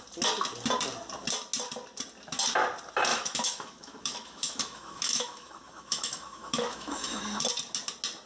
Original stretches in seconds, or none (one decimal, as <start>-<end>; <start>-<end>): 0.0-3.1; 7.2-8.3